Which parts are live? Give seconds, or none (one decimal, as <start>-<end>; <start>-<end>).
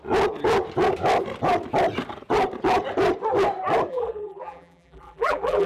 0.0-3.9